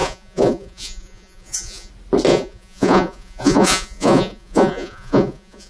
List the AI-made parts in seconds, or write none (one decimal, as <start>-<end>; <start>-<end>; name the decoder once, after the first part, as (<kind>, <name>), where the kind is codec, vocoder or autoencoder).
0.0-1.9 (vocoder, Vocos); 2.3-5.7